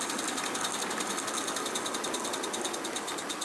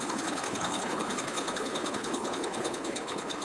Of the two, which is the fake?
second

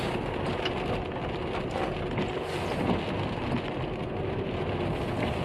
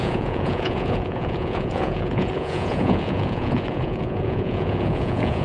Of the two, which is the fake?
second